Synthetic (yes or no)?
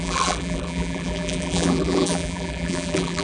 yes